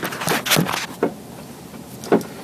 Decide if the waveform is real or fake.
real